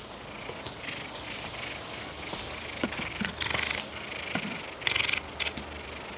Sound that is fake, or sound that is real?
real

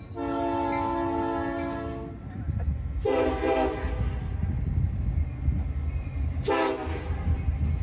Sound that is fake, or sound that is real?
real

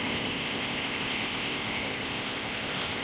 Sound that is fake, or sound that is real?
fake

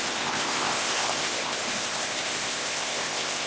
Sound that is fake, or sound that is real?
fake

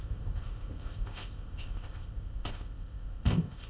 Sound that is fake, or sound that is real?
fake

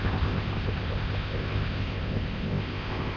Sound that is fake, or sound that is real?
fake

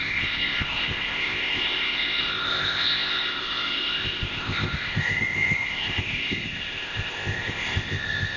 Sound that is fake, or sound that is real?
fake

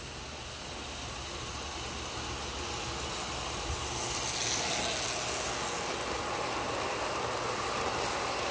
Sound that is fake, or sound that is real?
real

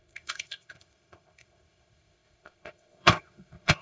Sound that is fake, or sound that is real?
fake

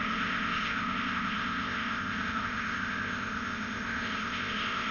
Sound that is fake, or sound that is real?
fake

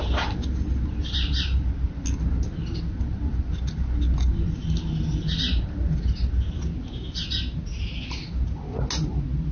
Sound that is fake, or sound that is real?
real